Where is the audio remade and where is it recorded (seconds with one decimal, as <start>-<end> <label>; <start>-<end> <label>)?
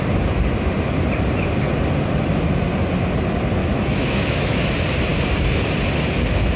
0.0-3.6 recorded; 3.6-4.6 remade; 4.6-6.6 recorded